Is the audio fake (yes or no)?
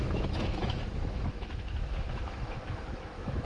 yes